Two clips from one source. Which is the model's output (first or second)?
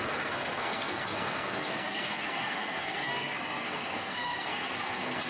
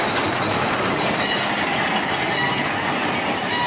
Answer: first